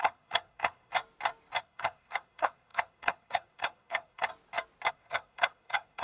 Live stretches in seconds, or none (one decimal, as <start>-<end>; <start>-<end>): 0.9-1.6; 4.3-4.9